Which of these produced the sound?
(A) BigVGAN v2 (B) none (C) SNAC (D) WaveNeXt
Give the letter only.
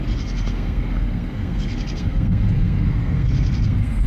C